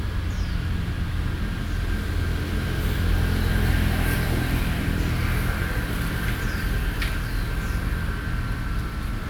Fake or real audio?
real